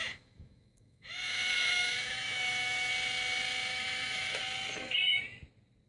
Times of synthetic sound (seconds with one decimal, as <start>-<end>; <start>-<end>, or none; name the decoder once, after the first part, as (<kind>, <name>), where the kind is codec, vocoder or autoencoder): 0.0-2.9 (autoencoder, DAC-VAE); 3.7-4.4